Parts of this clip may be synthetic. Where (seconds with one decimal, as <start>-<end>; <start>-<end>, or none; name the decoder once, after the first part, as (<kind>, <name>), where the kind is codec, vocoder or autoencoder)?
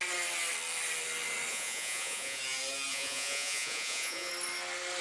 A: 1.5-2.4 (vocoder, Vocos); 2.9-4.3